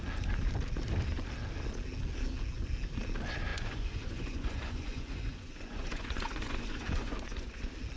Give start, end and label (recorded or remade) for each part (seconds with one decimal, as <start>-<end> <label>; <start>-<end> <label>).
0.0-3.5 recorded; 3.5-7.6 remade; 7.6-8.0 recorded

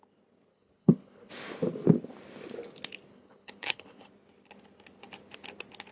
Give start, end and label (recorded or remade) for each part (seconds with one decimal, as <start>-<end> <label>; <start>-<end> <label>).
0.0-0.5 recorded; 0.5-1.3 remade; 1.3-3.1 recorded; 3.1-4.1 remade; 4.1-5.9 recorded

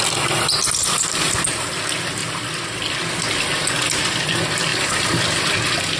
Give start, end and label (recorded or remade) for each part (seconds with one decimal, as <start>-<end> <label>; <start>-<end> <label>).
0.0-4.7 recorded; 4.7-5.4 remade; 5.4-6.0 recorded

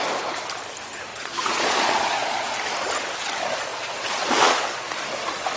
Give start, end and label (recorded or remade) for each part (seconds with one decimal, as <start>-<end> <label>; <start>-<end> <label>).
0.0-1.1 recorded; 1.1-2.5 remade; 2.5-3.7 recorded; 3.7-4.9 remade; 4.9-5.6 recorded

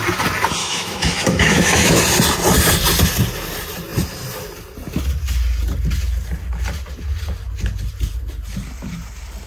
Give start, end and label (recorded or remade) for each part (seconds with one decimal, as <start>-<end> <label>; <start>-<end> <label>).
0.0-0.6 recorded; 0.6-2.0 remade; 2.0-9.5 recorded